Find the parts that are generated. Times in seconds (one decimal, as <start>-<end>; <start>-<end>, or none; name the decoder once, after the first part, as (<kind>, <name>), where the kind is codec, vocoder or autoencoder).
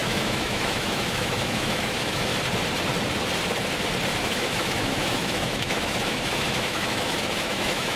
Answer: 0.0-2.3 (autoencoder, DAC-VAE); 4.2-8.0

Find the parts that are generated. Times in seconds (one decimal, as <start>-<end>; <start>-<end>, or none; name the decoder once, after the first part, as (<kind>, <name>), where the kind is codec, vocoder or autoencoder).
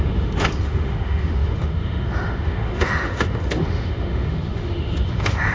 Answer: 0.0-5.5 (autoencoder, DAC-VAE)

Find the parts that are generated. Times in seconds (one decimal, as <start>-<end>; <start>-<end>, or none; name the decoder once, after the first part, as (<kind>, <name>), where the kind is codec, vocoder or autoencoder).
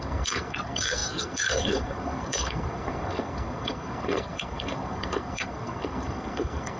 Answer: 0.0-6.8 (codec, SNAC)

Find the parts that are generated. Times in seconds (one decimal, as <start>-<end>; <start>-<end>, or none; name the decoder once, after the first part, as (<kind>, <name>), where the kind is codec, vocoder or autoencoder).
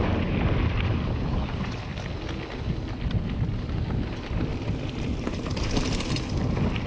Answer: 4.5-5.9 (vocoder, BigVGAN v2)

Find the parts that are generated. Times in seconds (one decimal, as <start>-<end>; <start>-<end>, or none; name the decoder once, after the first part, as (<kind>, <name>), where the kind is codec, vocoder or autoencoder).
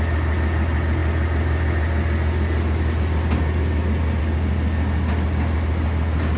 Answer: none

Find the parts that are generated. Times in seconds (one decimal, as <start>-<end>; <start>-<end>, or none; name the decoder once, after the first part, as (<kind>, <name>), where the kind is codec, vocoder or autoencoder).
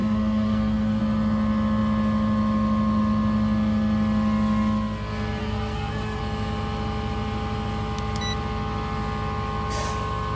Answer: 0.0-1.0 (codec, SNAC); 5.4-6.2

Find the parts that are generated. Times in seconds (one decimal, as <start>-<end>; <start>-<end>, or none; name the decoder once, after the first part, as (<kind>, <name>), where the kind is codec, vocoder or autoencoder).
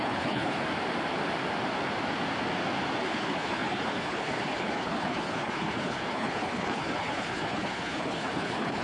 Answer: 0.0-0.6 (codec, HILCodec); 3.0-8.8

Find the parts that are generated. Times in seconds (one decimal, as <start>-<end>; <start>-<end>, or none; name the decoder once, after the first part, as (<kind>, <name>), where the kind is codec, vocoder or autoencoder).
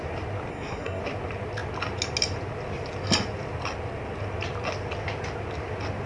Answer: 0.5-1.0 (codec, SNAC)